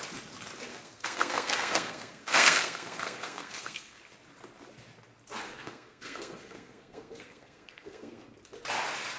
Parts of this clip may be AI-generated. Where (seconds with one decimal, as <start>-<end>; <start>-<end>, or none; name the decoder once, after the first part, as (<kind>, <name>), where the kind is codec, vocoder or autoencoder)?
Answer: 0.7-4.0 (codec, SNAC); 5.5-8.2